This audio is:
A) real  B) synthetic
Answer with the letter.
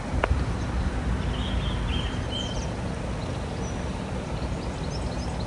A